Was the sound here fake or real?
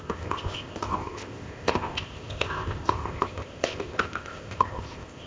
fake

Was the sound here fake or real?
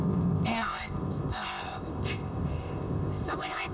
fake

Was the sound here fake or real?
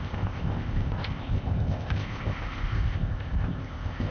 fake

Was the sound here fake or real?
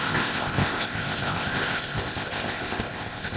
fake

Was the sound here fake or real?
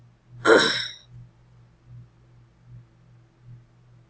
real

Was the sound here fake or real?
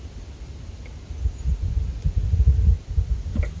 real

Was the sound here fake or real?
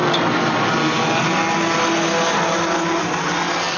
real